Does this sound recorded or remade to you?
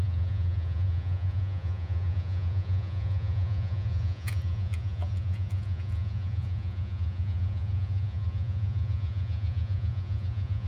remade